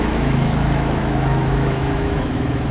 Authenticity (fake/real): fake